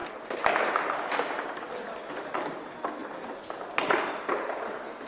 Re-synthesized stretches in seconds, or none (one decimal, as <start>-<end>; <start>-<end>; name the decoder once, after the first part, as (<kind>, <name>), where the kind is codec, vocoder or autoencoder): none